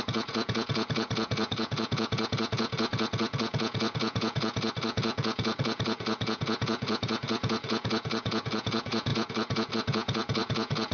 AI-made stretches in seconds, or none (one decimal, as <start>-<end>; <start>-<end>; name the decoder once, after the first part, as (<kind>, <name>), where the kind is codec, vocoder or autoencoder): 0.0-10.9 (vocoder, Vocos)